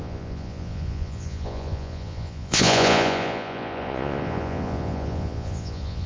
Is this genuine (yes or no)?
no